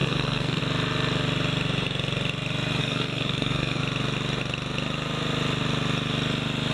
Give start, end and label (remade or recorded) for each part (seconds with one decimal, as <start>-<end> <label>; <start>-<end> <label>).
0.0-0.6 remade; 0.6-2.8 recorded; 2.8-3.8 remade; 3.8-6.7 recorded